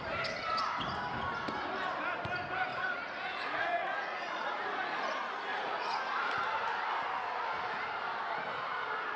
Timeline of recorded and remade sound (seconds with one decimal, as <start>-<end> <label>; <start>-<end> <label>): 0.0-2.7 recorded; 2.7-5.1 remade; 5.1-5.5 recorded; 5.5-6.0 remade; 6.0-9.2 recorded